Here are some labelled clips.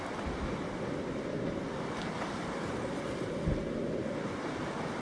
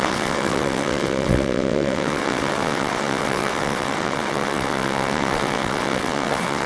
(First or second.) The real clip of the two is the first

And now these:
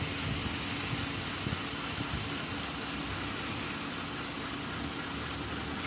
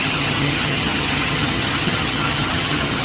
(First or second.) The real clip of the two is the first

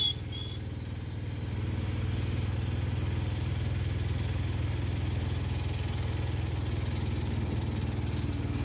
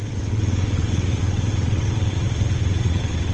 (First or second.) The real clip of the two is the first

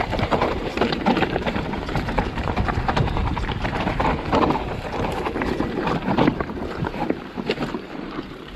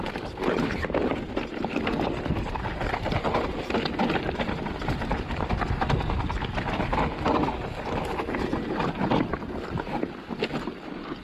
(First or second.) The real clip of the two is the second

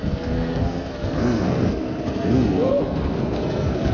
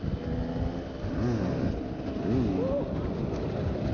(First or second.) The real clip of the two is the second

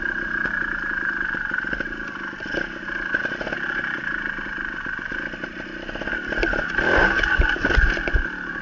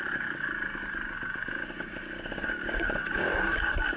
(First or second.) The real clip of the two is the first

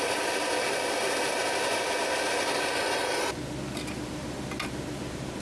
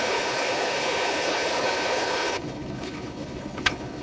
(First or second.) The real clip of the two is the first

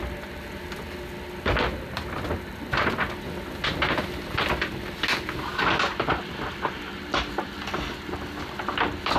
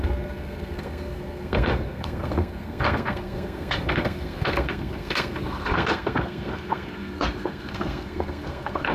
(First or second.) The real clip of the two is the first